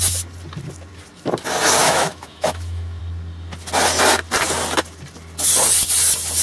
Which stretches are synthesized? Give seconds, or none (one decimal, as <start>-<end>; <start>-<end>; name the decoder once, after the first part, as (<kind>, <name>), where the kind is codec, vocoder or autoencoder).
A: 1.8-3.0 (autoencoder, DAC-VAE)